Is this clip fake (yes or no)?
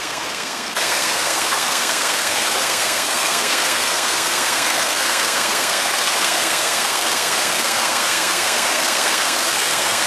yes